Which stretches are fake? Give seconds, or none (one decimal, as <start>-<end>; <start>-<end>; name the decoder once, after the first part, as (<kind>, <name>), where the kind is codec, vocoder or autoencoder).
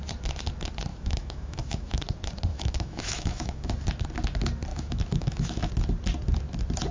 0.9-2.0 (autoencoder, DAC-VAE); 2.5-3.7; 4.7-5.7